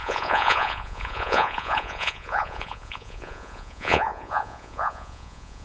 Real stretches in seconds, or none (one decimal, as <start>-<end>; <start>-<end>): none